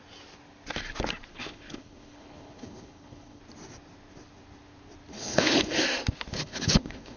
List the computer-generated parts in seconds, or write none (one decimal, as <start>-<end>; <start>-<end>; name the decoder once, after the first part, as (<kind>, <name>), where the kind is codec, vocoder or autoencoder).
1.3-3.4 (codec, HILCodec); 5.1-5.8; 6.3-7.2